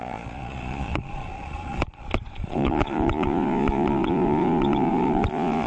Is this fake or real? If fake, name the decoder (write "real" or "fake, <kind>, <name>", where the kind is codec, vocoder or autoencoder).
fake, vocoder, Vocos